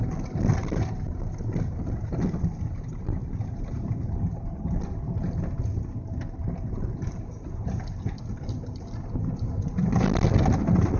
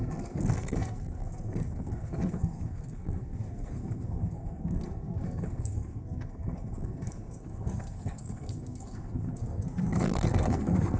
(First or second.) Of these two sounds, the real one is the first